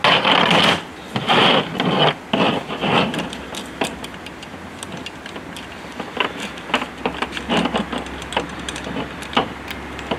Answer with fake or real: real